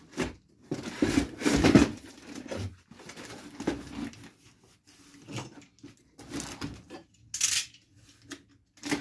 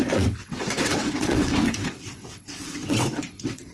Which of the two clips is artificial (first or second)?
second